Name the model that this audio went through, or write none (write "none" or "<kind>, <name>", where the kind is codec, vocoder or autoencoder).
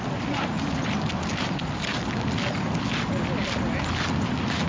none